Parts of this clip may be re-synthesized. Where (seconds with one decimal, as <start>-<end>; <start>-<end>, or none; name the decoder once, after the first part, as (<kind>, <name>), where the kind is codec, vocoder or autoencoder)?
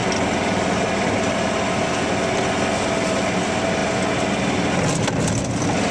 none